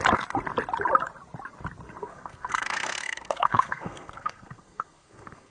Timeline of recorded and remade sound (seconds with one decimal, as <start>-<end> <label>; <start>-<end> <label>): 0.0-2.0 recorded; 2.0-5.5 remade

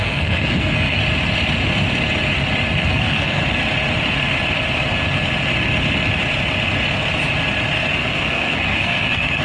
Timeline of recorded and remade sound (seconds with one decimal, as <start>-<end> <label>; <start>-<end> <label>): 0.0-1.0 remade; 1.0-2.8 recorded; 2.8-3.4 remade; 3.4-8.0 recorded; 8.0-9.4 remade

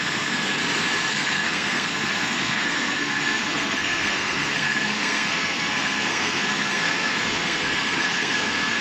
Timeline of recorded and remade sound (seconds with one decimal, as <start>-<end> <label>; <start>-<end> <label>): 0.0-0.6 remade; 0.6-1.1 recorded; 1.1-8.8 remade

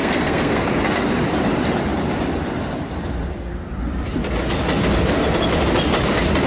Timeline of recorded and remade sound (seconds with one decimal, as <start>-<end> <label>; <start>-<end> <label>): 0.0-0.7 remade; 0.7-6.5 recorded

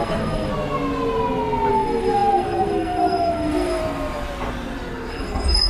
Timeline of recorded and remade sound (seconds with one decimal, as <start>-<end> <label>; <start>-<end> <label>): 0.0-0.5 remade; 0.5-1.7 recorded; 1.7-3.8 remade; 3.8-5.1 recorded; 5.1-5.7 remade

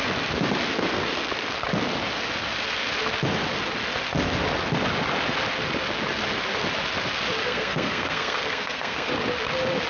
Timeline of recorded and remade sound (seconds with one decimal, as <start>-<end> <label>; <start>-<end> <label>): 0.0-7.4 recorded; 7.4-9.1 remade; 9.1-9.9 recorded